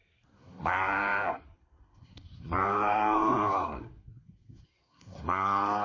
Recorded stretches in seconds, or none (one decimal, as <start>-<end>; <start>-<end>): none